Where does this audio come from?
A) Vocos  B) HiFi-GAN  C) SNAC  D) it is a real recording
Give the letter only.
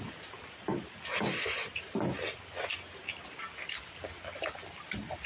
D